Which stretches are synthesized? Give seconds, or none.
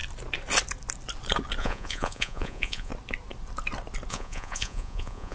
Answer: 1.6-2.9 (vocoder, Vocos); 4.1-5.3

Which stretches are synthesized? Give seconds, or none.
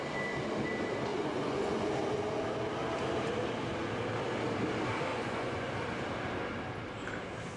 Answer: 1.1-1.9 (vocoder, Vocos); 5.1-5.7